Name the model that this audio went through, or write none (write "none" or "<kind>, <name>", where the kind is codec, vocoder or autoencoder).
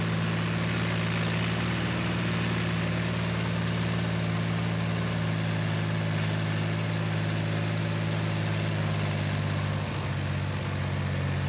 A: none